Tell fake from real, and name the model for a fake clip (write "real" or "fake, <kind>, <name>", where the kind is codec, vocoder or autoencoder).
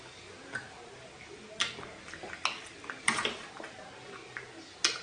real